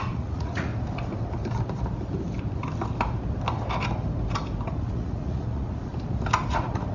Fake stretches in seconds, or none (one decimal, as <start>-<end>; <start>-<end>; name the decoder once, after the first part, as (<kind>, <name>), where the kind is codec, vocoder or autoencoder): 0.0-0.7 (vocoder, Vocos); 4.8-5.9; 6.5-6.9